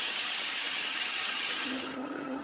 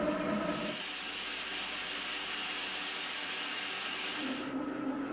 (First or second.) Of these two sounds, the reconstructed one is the first